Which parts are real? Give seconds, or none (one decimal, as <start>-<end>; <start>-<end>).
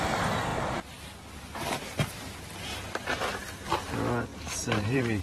0.0-0.5; 1.1-1.6; 2.2-2.7; 3.7-4.3